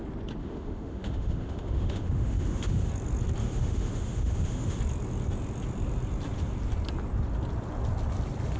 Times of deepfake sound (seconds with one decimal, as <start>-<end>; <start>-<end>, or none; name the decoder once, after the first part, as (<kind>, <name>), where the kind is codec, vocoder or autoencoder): 0.4-2.9 (autoencoder, DAC-VAE); 3.4-4.8

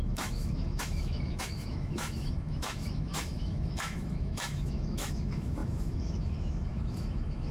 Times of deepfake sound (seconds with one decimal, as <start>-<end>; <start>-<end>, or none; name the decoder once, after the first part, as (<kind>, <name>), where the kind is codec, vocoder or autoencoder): 0.0-7.5 (autoencoder, DAC-VAE)

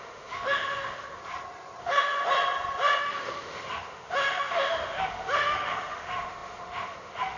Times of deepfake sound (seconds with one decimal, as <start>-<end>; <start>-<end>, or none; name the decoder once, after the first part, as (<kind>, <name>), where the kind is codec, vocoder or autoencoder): 0.0-1.2 (autoencoder, DAC-VAE); 1.8-2.2; 3.0-7.4

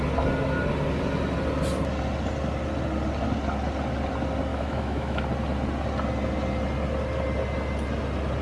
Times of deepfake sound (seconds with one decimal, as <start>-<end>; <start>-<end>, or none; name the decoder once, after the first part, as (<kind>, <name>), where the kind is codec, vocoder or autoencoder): 4.5-5.2 (autoencoder, DAC-VAE)